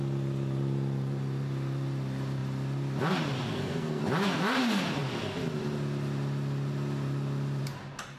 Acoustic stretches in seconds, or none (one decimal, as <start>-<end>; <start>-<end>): 0.0-3.5; 4.0-8.2